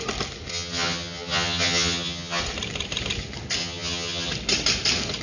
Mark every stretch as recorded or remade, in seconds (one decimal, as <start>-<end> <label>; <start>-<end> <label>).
0.0-0.5 recorded; 0.5-2.4 remade; 2.4-3.6 recorded; 3.6-4.3 remade; 4.3-5.2 recorded